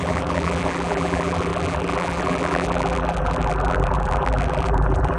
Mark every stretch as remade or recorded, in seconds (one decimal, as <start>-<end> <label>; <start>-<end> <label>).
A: 0.0-5.2 remade